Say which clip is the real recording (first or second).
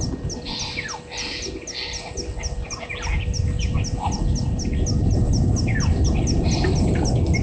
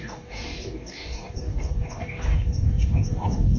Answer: first